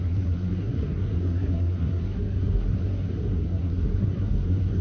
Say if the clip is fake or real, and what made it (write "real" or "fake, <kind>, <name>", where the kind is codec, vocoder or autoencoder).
fake, codec, SNAC